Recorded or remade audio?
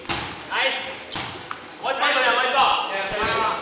recorded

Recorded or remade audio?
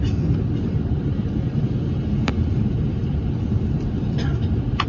remade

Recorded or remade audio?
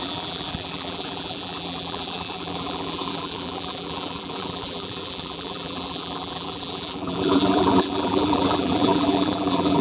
remade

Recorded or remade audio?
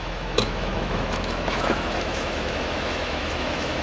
remade